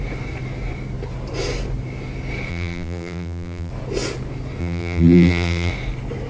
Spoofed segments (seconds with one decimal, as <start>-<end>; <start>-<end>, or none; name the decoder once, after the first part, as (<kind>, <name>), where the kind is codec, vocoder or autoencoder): 2.5-3.7 (vocoder, BigVGAN v2); 4.6-5.7